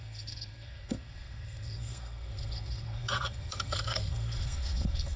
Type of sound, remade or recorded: remade